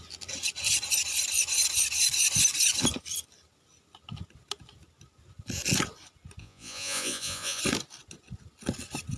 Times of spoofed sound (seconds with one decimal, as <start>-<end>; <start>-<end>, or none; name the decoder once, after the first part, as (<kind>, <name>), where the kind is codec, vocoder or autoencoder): 6.4-7.6 (vocoder, Vocos)